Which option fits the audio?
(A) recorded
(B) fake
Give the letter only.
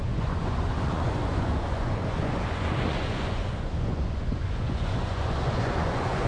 B